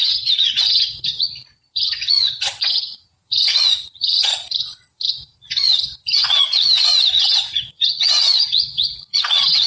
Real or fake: fake